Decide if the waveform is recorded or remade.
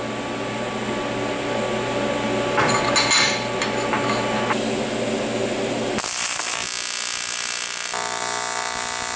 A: recorded